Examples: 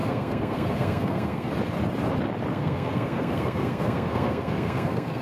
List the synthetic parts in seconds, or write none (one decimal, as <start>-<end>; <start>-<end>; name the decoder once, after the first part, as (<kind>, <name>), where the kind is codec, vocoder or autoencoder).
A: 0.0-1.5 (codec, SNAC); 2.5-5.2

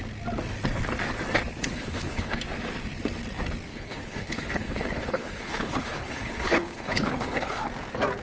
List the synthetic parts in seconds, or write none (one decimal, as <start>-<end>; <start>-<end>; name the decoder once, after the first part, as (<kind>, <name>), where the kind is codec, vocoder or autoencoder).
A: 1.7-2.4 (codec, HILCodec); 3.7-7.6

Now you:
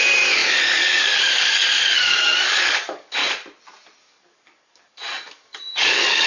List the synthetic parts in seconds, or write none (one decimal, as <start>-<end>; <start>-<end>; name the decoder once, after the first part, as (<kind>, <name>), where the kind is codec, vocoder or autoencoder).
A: 0.0-3.2 (codec, DAC); 4.0-6.3